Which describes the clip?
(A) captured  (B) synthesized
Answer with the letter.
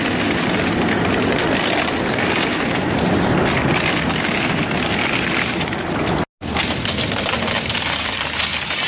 A